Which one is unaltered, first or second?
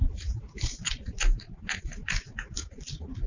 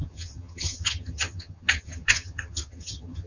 first